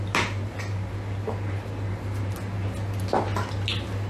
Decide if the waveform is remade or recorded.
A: recorded